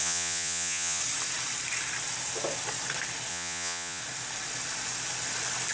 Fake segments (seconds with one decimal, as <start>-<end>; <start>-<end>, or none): 0.0-1.0; 3.3-4.0